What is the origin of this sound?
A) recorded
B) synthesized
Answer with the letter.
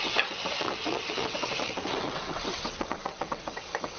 B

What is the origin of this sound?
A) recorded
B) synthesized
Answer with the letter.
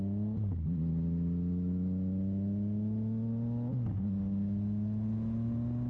A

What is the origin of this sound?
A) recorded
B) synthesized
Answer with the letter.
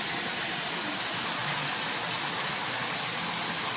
A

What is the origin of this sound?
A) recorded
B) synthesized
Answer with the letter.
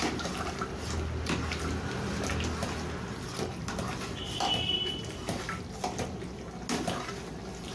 A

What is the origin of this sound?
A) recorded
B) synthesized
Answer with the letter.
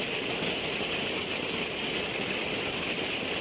A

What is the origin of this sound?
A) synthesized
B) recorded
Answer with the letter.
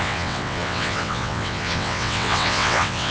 A